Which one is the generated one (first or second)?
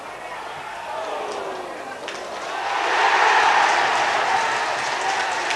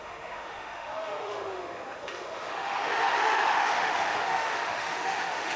second